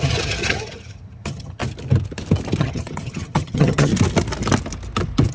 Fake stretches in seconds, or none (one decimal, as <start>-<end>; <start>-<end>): 0.0-1.6; 2.6-3.9